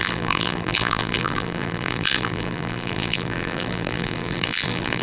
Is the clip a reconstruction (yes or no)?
yes